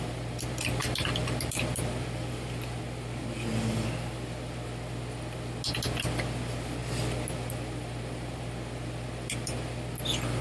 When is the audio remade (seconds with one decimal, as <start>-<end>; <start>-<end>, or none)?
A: none